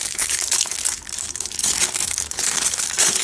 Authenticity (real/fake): fake